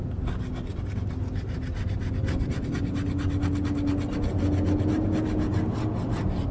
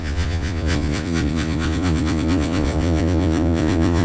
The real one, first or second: first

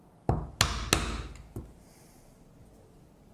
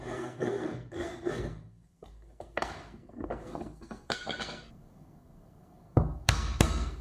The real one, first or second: first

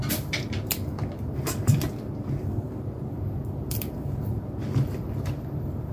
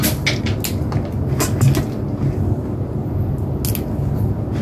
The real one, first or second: second